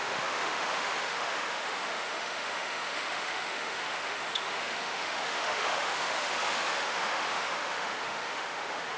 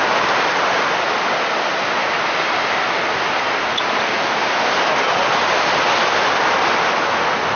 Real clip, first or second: second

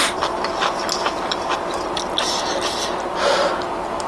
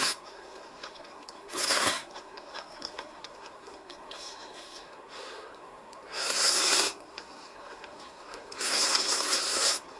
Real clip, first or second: first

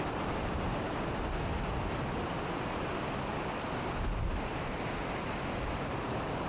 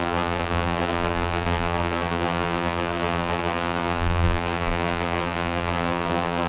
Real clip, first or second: first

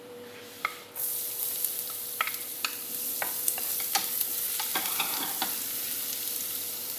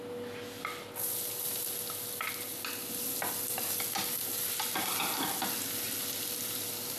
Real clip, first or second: second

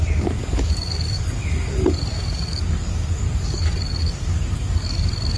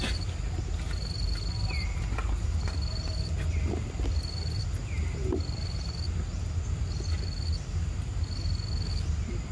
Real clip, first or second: second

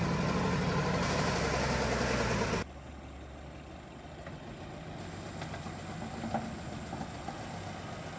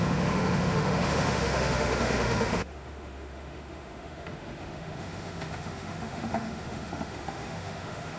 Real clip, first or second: first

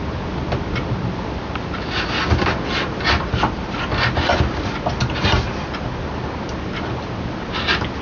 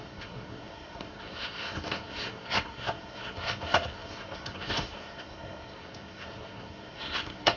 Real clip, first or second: first